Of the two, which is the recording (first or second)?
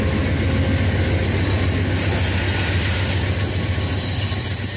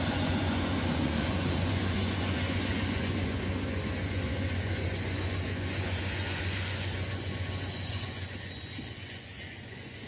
first